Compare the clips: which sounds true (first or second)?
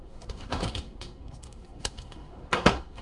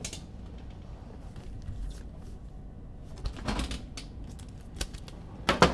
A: second